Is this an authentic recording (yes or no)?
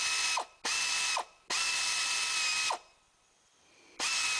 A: yes